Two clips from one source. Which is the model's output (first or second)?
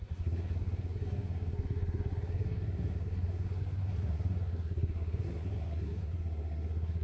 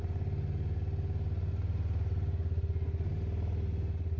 first